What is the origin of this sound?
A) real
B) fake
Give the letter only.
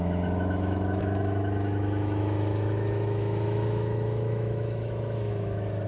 B